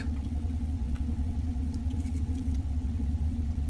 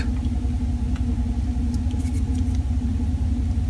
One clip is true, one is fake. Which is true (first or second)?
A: second